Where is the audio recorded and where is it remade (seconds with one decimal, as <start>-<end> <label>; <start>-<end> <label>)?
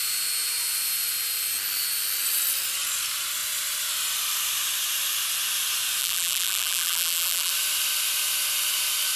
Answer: 0.0-6.0 recorded; 6.0-7.5 remade; 7.5-9.2 recorded